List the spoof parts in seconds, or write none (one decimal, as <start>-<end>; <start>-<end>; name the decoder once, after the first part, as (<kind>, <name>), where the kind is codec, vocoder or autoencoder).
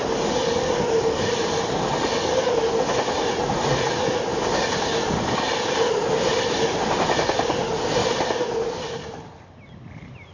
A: none